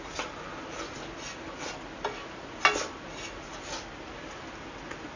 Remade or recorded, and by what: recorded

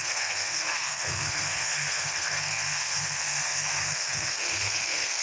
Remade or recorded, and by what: remade, codec, SNAC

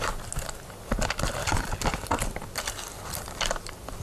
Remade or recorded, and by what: recorded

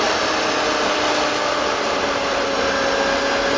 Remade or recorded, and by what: recorded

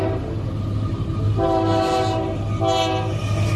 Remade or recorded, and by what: recorded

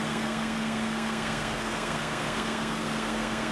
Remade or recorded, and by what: remade, codec, SNAC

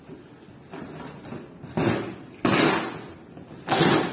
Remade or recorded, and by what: recorded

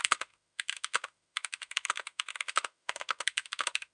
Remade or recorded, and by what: remade, autoencoder, DAC-VAE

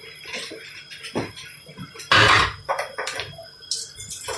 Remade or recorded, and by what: recorded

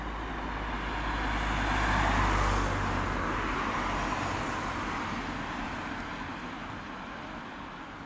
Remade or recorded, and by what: recorded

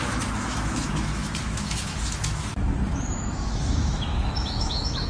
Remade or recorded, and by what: remade, autoencoder, DAC-VAE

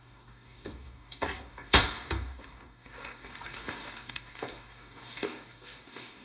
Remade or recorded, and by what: remade, codec, DAC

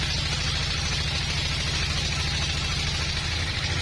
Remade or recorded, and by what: recorded